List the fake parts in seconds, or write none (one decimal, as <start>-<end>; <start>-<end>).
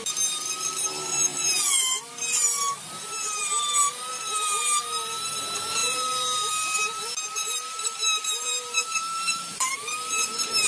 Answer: 5.8-6.5; 8.0-9.7